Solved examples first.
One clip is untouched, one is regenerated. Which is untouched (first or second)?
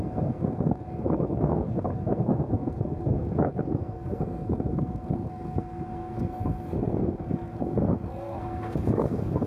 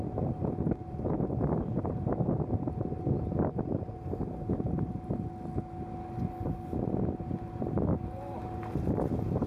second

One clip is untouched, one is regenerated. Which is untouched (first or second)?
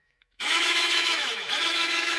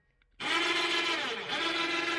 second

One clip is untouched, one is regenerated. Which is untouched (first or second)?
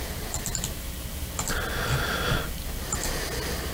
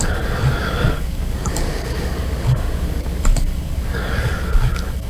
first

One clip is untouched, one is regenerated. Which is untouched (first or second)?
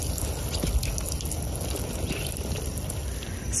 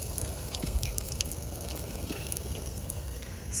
first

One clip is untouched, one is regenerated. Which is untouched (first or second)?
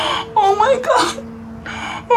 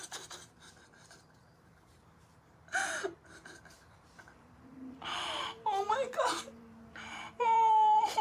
first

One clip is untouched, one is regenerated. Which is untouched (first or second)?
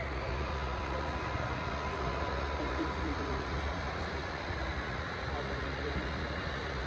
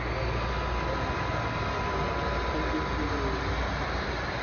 second